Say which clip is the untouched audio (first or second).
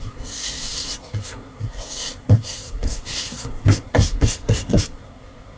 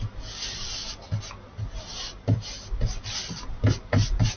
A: second